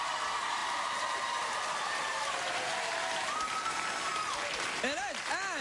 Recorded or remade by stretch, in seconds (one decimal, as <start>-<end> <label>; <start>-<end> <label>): 0.0-4.1 remade; 4.1-5.6 recorded